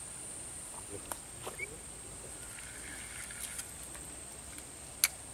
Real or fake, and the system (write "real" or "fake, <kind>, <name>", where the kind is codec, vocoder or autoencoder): real